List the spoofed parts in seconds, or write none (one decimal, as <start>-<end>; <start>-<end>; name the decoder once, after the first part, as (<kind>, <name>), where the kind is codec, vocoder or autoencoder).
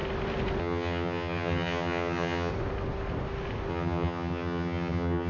0.6-2.5 (vocoder, HiFi-GAN); 3.7-5.3